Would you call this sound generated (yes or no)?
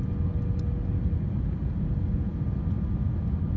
no